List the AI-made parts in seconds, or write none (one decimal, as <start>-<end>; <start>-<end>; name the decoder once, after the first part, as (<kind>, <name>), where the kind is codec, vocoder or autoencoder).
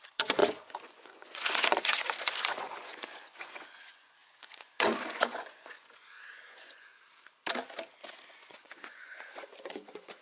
0.0-6.9 (vocoder, Vocos); 8.3-10.2